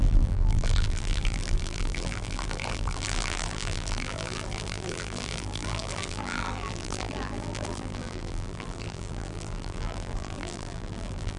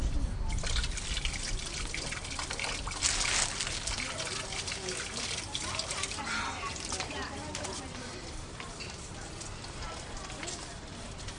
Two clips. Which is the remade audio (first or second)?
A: first